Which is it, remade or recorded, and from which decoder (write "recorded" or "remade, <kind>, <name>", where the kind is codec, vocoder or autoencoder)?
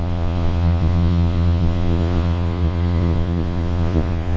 remade, vocoder, Vocos